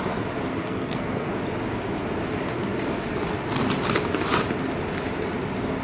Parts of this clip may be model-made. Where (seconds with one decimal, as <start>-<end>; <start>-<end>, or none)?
0.5-1.3